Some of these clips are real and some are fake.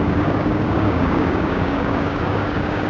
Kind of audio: fake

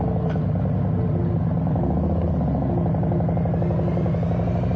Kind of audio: real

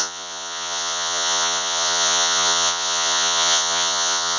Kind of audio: fake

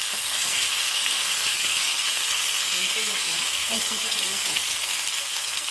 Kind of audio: fake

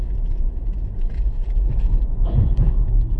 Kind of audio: fake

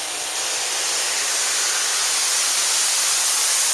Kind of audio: real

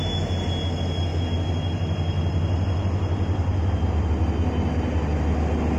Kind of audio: real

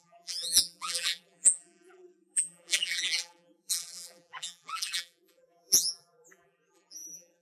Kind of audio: fake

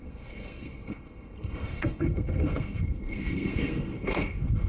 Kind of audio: fake